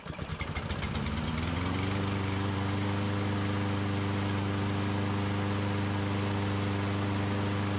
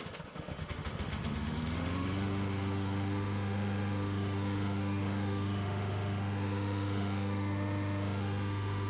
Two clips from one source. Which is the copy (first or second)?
second